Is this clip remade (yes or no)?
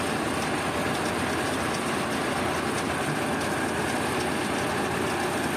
no